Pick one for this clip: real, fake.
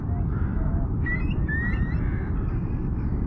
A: real